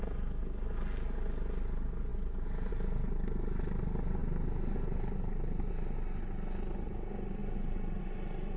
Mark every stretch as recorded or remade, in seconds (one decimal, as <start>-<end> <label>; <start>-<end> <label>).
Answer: 0.0-8.6 recorded

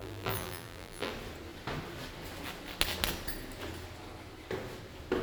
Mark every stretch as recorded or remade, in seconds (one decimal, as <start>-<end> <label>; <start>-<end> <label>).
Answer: 0.0-1.1 remade; 1.1-5.2 recorded

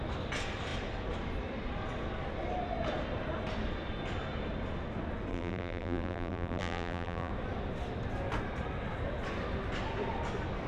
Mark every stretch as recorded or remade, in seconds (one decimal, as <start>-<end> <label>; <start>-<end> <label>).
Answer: 0.0-5.3 recorded; 5.3-7.3 remade; 7.3-10.7 recorded

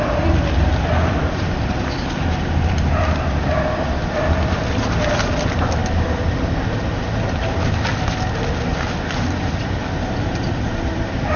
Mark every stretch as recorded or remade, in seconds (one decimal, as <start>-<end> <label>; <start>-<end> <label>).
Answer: 0.0-5.8 remade; 5.8-9.4 recorded; 9.4-11.4 remade

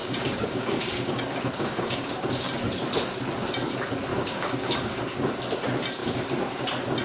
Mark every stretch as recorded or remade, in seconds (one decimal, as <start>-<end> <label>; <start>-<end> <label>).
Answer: 0.0-2.5 remade; 2.5-4.1 recorded; 4.1-5.1 remade; 5.1-7.0 recorded

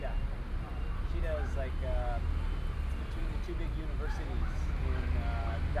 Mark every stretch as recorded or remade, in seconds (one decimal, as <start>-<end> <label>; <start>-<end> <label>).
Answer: 0.0-5.8 recorded